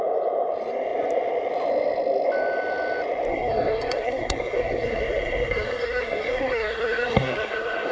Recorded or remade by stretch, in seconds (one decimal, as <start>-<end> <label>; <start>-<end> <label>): 0.0-3.3 recorded; 3.3-7.9 remade